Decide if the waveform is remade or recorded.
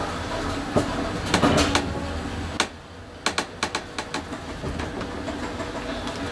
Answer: recorded